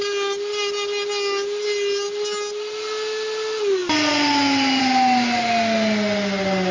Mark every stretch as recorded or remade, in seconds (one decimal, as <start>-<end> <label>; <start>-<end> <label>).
0.0-6.7 recorded